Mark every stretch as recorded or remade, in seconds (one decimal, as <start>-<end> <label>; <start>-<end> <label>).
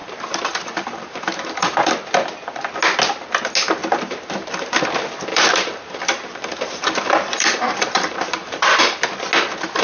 0.0-1.9 remade; 1.9-3.8 recorded; 3.8-4.8 remade; 4.8-5.3 recorded; 5.3-8.8 remade; 8.8-9.8 recorded